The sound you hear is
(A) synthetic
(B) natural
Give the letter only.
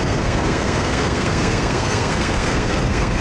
A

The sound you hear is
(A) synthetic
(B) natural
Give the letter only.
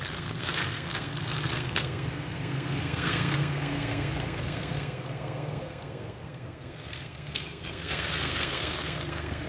A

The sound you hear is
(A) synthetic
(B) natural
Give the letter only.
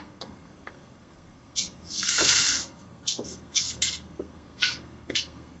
A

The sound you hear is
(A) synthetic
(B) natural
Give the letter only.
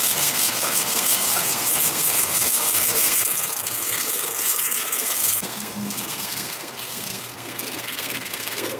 A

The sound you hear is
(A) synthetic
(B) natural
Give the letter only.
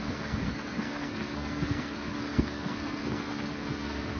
A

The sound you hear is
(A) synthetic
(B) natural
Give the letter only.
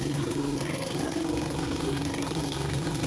A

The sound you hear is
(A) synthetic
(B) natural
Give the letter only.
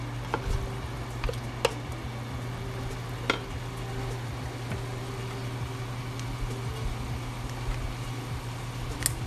B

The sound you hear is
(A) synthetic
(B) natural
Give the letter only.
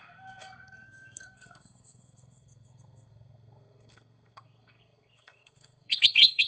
A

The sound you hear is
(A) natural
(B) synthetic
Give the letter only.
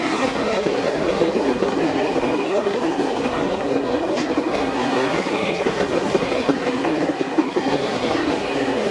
B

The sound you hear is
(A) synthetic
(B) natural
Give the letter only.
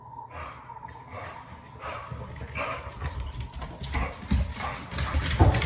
B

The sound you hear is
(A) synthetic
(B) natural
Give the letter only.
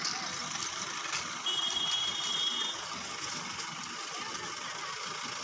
B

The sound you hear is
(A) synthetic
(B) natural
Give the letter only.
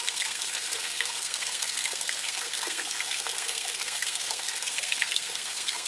A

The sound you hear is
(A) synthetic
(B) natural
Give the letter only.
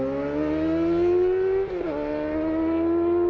B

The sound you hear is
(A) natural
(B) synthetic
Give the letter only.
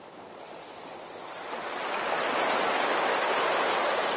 A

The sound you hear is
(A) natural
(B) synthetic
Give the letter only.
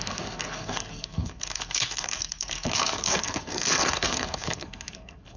B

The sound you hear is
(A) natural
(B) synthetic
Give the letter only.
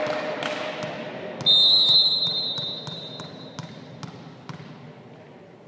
A